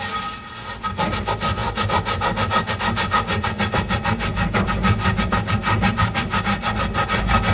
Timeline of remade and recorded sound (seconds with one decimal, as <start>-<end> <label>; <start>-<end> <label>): 0.0-7.5 recorded